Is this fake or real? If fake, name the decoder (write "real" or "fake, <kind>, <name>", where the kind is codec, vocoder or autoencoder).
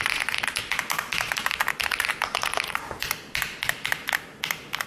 real